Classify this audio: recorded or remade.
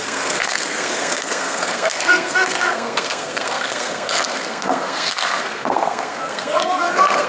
remade